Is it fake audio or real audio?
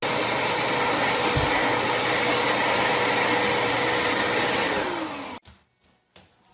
real